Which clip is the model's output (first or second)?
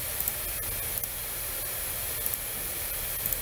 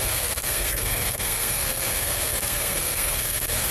second